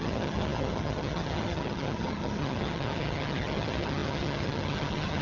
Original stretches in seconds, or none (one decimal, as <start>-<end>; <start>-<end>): none